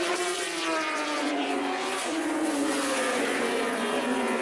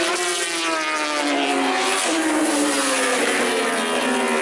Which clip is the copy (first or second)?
first